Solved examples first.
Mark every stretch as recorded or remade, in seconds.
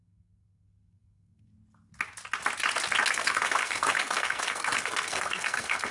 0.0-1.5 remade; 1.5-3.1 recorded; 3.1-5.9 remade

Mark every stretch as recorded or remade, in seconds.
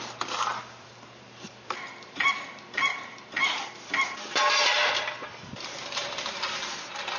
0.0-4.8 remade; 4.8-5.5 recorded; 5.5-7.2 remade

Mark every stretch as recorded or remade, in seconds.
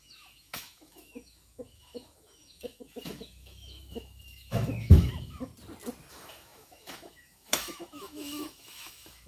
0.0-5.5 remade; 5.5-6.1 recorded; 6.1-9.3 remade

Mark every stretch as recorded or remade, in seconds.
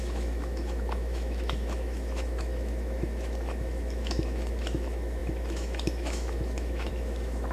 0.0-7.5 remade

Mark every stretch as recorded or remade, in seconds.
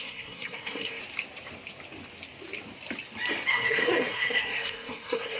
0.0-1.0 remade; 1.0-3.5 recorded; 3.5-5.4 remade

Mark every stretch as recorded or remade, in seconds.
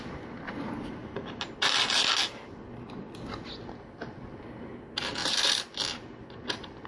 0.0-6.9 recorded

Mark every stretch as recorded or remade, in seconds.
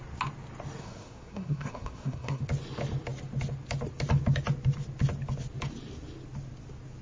0.0-0.8 recorded; 0.8-2.4 remade; 2.4-7.0 recorded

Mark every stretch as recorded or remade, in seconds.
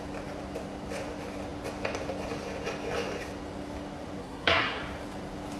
0.0-4.2 recorded; 4.2-4.8 remade; 4.8-5.6 recorded